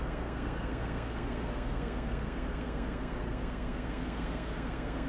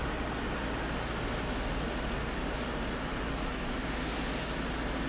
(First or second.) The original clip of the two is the second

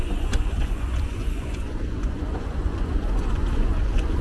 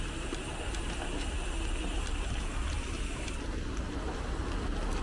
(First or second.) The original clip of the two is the second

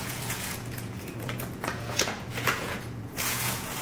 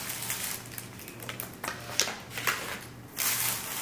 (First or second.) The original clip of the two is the second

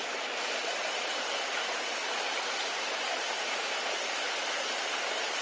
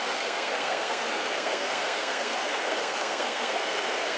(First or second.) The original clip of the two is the first